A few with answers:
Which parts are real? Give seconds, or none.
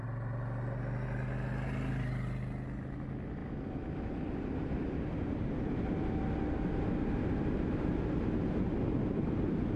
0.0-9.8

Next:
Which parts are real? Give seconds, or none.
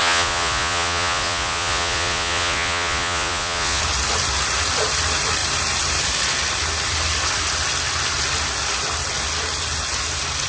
3.8-10.5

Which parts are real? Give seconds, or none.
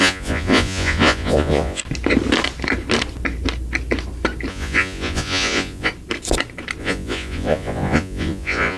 1.8-4.5; 5.9-6.8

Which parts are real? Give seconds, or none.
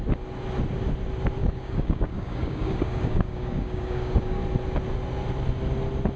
0.0-1.4; 4.4-6.2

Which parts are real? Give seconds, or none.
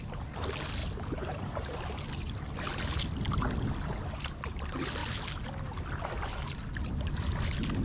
0.0-0.8; 1.5-7.8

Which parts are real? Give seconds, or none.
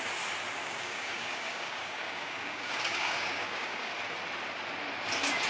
0.0-0.6; 3.9-5.5